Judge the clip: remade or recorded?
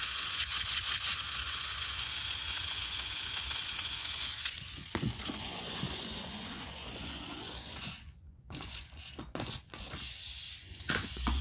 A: remade